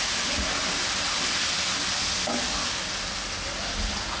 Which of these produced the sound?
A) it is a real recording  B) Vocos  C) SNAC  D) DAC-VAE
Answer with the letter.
A